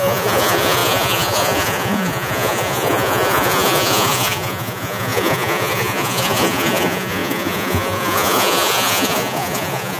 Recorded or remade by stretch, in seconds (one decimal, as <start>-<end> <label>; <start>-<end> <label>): 0.0-10.0 remade